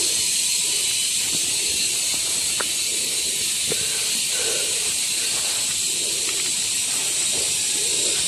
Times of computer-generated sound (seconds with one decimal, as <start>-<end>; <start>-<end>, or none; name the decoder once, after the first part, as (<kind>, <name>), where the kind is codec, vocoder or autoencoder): none